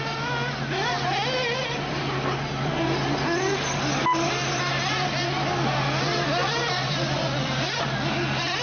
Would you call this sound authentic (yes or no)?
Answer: yes